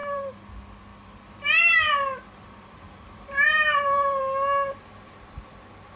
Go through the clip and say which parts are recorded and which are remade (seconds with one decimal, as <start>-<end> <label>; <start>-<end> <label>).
0.0-0.5 remade; 0.5-0.9 recorded; 0.9-4.2 remade; 4.2-6.0 recorded